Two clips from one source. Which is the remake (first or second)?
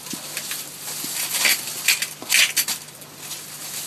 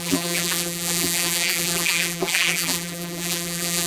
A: second